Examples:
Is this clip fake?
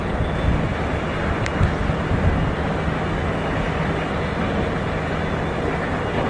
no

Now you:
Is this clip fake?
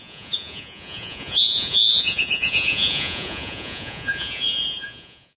yes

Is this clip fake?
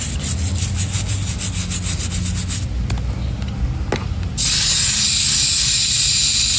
no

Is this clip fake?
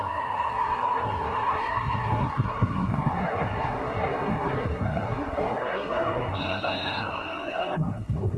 yes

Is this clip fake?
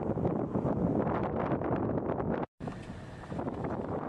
yes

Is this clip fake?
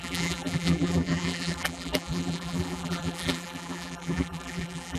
yes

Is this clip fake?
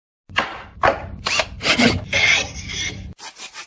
no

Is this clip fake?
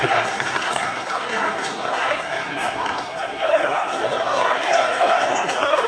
yes